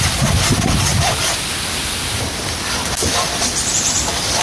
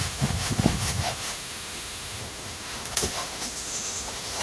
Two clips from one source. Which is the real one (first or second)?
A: first